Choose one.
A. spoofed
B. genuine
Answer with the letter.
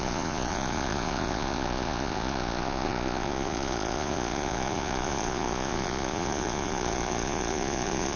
A